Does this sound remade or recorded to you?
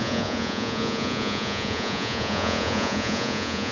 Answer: remade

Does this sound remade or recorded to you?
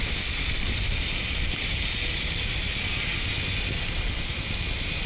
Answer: recorded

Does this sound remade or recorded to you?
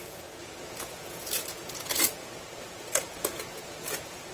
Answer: remade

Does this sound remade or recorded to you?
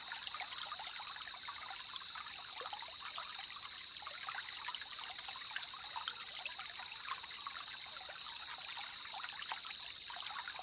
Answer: recorded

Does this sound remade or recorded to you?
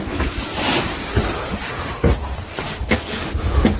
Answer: recorded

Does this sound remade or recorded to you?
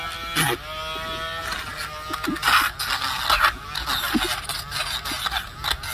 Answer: recorded